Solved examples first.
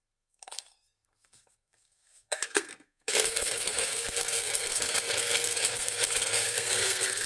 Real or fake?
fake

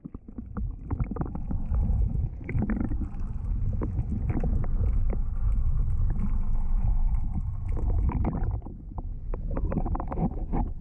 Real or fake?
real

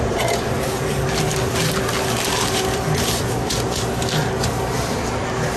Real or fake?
real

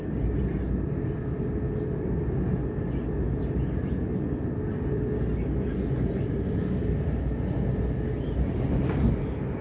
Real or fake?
real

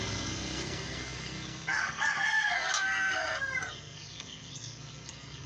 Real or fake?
fake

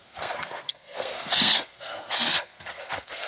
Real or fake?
fake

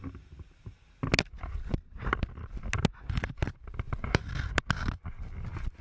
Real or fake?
real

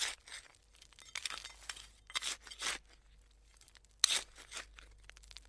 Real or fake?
real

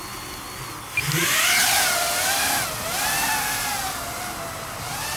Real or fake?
real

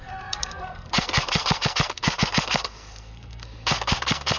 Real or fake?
fake